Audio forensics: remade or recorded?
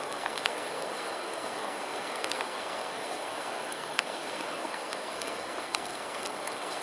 remade